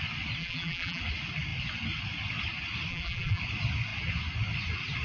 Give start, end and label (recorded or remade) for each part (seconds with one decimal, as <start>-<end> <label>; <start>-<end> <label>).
0.0-0.4 recorded; 0.4-1.0 remade; 1.0-2.9 recorded; 2.9-3.4 remade; 3.4-5.0 recorded